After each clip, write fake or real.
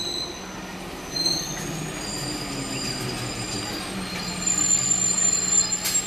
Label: real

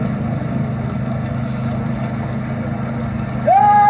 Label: real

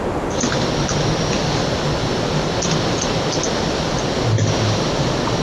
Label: real